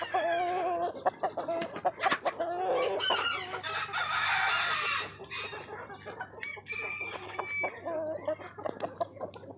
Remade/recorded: recorded